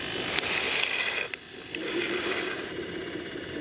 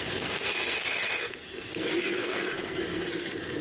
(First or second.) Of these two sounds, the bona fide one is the first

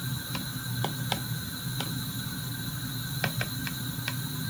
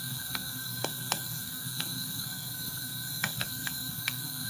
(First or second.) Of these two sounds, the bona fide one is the first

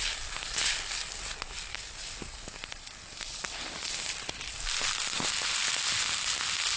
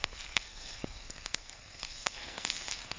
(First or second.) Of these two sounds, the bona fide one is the first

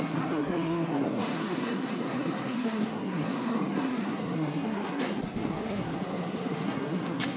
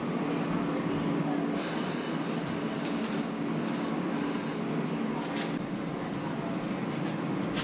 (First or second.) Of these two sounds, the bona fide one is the second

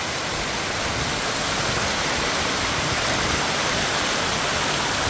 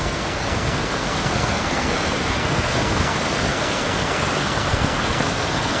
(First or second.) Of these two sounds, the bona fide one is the first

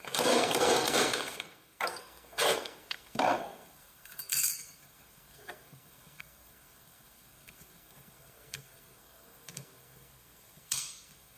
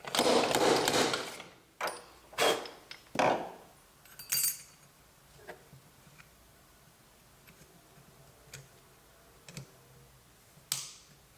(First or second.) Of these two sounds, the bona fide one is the second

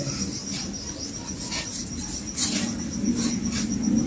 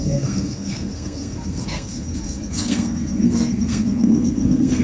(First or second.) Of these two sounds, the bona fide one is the first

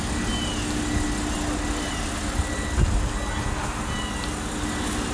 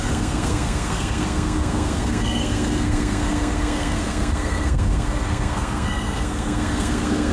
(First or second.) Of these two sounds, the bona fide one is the first